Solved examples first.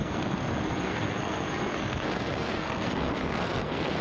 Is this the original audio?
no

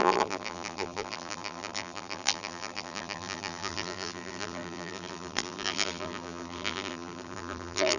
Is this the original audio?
no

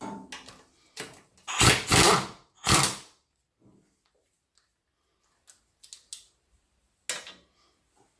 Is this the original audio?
yes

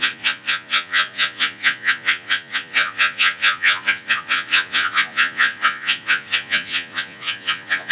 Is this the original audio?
no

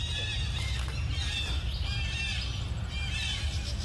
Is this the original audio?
yes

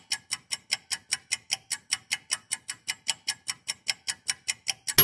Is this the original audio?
yes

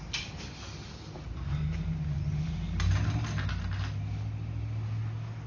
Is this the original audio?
yes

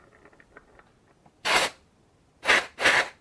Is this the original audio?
yes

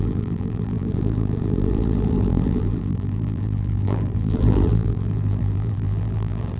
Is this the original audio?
no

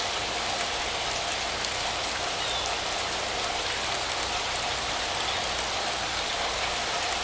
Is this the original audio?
yes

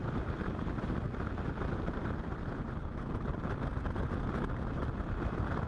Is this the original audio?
yes